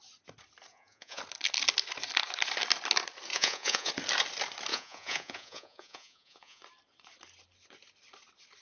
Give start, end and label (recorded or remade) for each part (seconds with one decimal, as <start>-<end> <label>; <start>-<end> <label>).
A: 0.0-0.7 recorded; 0.7-1.2 remade; 1.2-3.3 recorded; 3.3-3.9 remade; 3.9-4.7 recorded; 4.7-6.6 remade; 6.6-8.6 recorded